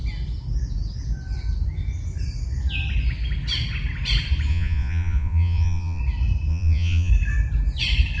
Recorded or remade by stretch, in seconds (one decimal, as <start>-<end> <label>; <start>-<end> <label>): 0.0-4.5 recorded; 4.5-6.0 remade; 6.0-6.5 recorded; 6.5-7.1 remade; 7.1-8.2 recorded